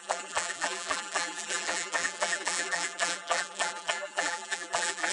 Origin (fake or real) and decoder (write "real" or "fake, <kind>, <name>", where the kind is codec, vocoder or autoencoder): fake, vocoder, BigVGAN v2